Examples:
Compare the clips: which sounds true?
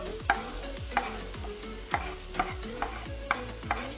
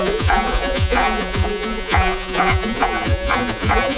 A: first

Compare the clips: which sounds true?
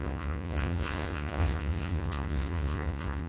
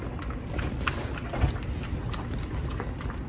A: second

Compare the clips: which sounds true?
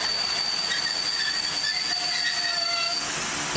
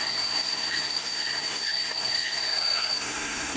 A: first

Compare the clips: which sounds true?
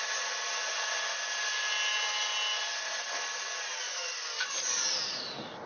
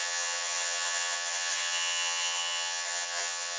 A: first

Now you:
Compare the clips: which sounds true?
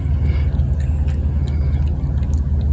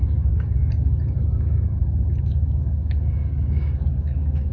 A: first